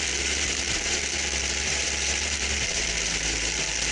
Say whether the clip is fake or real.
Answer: fake